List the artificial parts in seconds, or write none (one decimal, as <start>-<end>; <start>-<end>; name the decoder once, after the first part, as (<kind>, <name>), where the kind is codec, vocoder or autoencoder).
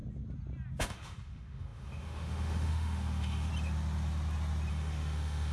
0.8-3.5 (autoencoder, DAC-VAE); 4.7-5.5